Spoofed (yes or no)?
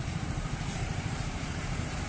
yes